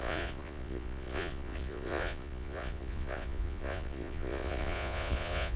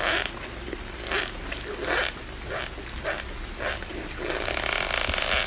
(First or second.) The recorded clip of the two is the second